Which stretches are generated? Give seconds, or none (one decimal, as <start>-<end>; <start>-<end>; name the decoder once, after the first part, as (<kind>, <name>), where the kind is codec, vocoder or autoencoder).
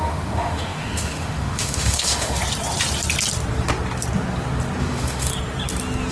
0.0-2.4 (autoencoder, DAC-VAE); 4.8-5.3